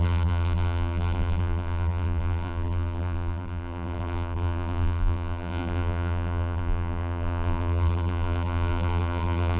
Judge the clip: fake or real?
fake